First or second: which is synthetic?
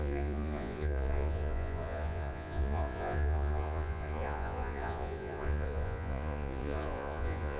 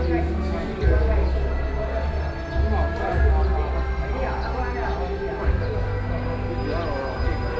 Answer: first